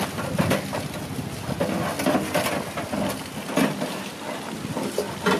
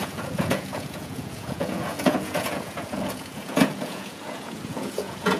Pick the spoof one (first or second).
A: second